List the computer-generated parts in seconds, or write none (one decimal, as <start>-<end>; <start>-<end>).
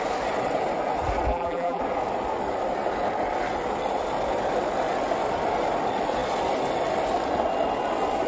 1.3-1.8